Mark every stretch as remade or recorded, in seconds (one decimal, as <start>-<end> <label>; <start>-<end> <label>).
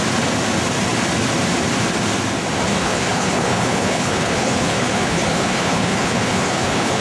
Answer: 0.0-2.8 recorded; 2.8-7.0 remade